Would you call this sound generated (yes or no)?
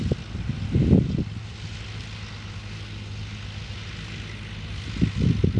no